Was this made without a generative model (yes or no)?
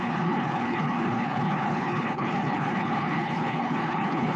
no